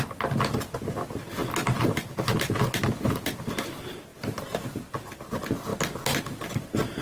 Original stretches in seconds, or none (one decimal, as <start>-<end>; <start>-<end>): 0.0-7.0